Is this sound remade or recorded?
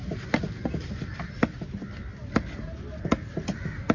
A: recorded